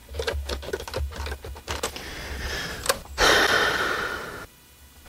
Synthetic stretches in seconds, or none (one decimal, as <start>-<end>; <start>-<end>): none